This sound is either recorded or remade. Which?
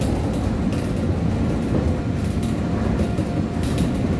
recorded